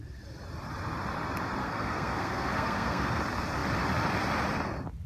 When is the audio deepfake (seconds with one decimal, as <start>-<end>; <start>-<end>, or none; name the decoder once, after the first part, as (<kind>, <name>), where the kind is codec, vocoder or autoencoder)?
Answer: 1.6-3.2 (codec, SNAC)